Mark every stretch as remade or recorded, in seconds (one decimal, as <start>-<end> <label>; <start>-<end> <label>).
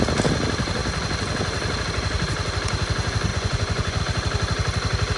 0.0-3.3 recorded; 3.3-4.0 remade; 4.0-5.2 recorded